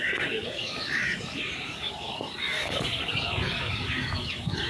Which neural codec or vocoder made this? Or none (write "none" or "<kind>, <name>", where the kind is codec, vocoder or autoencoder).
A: codec, DAC